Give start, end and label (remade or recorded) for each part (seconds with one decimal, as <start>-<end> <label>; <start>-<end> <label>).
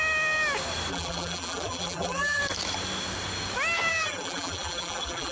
0.0-0.9 recorded; 0.9-2.4 remade; 2.4-3.9 recorded; 3.9-5.3 remade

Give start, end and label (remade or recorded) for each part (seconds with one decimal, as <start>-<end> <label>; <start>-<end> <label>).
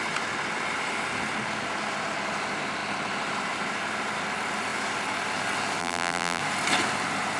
0.0-5.8 recorded; 5.8-6.4 remade; 6.4-7.4 recorded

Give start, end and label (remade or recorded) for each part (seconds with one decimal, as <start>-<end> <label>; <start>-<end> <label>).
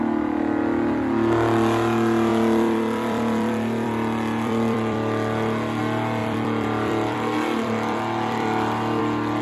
0.0-2.3 recorded; 2.3-5.8 remade; 5.8-6.2 recorded; 6.2-9.0 remade; 9.0-9.4 recorded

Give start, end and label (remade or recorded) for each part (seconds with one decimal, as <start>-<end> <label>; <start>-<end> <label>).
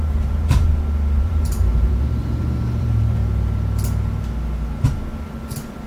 0.0-0.7 remade; 0.7-1.2 recorded; 1.2-3.2 remade; 3.2-5.3 recorded; 5.3-5.9 remade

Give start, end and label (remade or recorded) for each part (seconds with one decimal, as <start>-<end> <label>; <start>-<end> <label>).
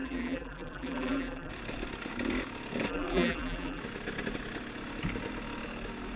0.0-1.5 remade; 1.5-2.9 recorded; 2.9-3.8 remade; 3.8-6.2 recorded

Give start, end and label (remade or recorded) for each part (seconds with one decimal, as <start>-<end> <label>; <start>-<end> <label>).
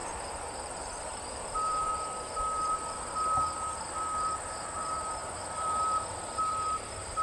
0.0-1.9 remade; 1.9-2.6 recorded; 2.6-7.2 remade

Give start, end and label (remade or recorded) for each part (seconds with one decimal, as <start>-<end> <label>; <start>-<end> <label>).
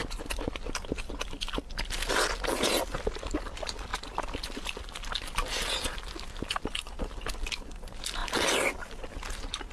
0.0-2.0 remade; 2.0-3.9 recorded; 3.9-5.7 remade; 5.7-9.7 recorded